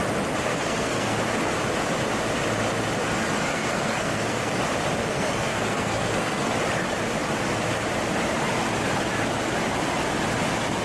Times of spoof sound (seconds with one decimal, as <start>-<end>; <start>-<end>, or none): 0.5-1.2; 3.5-4.6; 5.0-6.5